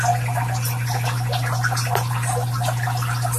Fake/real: real